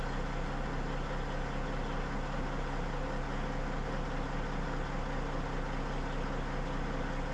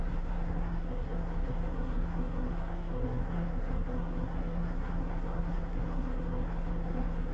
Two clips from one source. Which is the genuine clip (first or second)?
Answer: first